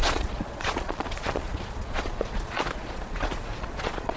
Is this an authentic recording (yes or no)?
no